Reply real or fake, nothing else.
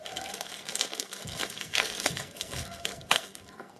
fake